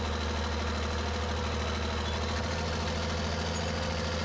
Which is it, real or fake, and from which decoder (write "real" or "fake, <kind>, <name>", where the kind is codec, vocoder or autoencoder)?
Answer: real